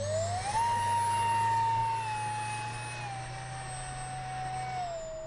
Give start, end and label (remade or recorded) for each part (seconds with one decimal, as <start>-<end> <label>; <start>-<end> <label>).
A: 0.0-5.3 recorded